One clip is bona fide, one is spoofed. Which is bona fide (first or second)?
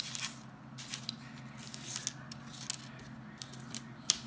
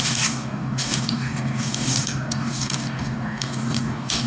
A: first